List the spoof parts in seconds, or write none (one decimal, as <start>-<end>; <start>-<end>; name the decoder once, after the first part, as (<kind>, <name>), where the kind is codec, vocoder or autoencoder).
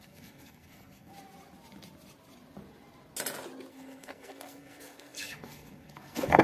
0.0-1.1 (codec, SNAC); 3.7-6.4